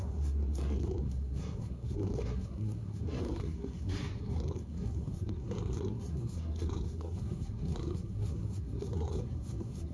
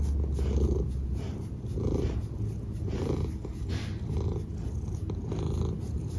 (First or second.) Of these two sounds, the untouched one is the second